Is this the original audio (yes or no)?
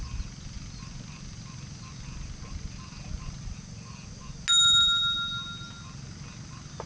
yes